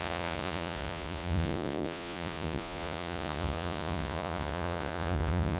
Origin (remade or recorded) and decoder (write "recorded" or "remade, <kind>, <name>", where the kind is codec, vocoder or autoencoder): remade, vocoder, Vocos